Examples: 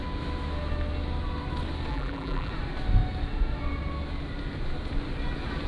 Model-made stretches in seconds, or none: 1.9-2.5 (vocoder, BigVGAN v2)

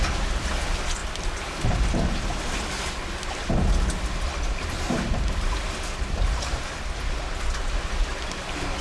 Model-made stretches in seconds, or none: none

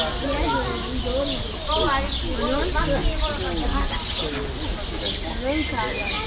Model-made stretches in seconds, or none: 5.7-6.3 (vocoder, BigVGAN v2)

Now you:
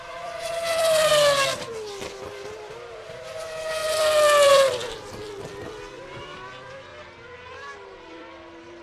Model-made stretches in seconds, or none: 0.0-1.1 (vocoder, BigVGAN v2); 2.8-6.9; 8.0-8.8

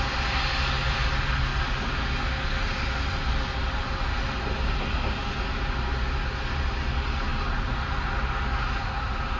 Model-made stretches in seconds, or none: none

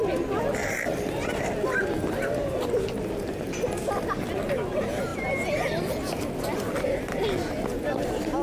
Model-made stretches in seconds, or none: none

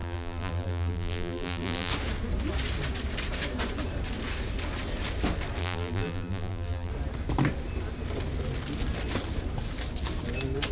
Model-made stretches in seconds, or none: 0.0-1.9 (vocoder, BigVGAN v2); 5.6-6.9

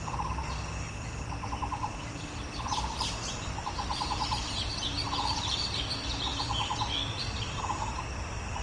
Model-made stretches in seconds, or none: 1.9-5.8 (vocoder, BigVGAN v2); 6.3-7.6